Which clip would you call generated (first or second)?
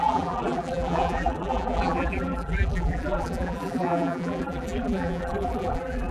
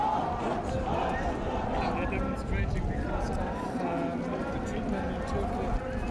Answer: first